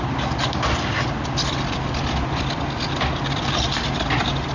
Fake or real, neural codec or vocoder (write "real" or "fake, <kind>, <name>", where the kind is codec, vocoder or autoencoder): real